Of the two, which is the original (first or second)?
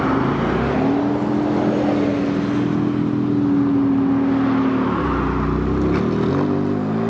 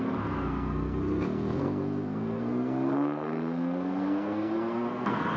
first